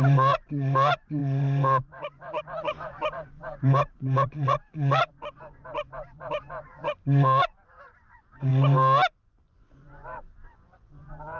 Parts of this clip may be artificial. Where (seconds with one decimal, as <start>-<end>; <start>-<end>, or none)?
0.0-8.5; 9.1-11.4